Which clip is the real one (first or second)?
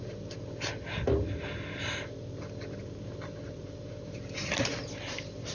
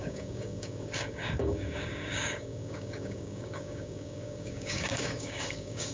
first